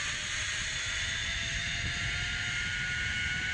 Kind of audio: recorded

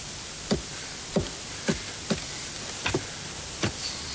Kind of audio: remade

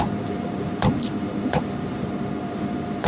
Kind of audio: remade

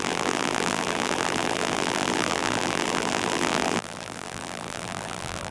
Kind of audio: remade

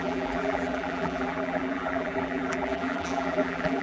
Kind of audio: remade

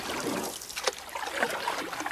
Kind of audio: recorded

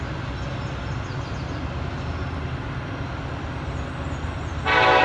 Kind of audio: recorded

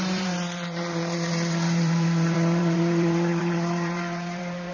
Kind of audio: remade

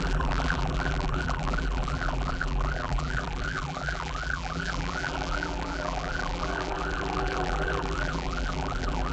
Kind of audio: remade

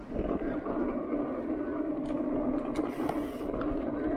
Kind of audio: recorded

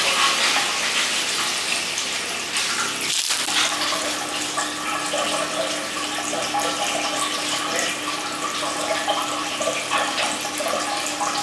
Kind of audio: recorded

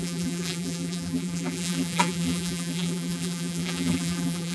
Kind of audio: remade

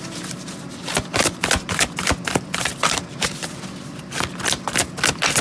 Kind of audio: recorded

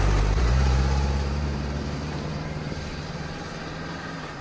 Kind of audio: remade